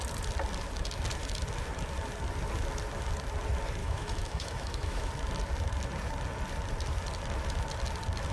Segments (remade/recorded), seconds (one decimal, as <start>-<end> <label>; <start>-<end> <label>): 0.0-3.8 recorded; 3.8-5.1 remade; 5.1-8.3 recorded